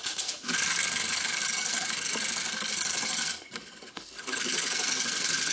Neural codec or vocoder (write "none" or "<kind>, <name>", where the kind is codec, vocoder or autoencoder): codec, SNAC